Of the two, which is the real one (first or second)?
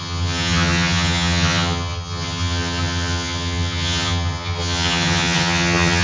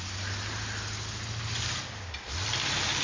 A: second